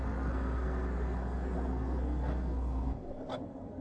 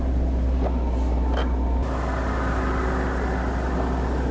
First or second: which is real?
second